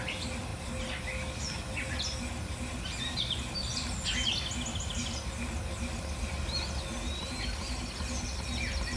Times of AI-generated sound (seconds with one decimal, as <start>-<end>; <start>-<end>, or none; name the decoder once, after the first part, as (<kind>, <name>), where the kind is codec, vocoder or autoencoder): none